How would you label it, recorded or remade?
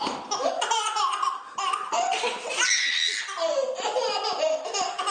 recorded